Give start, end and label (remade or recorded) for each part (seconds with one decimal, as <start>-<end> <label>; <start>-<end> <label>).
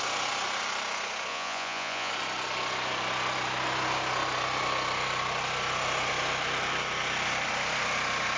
0.0-1.3 recorded; 1.3-2.1 remade; 2.1-8.4 recorded